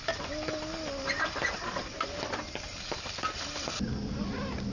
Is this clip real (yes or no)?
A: yes